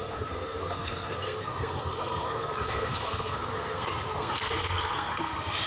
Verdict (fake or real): fake